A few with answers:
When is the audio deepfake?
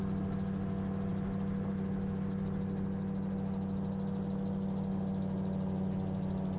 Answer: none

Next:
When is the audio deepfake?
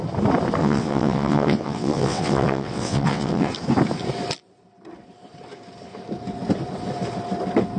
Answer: 0.6-3.5 (vocoder, WaveNeXt)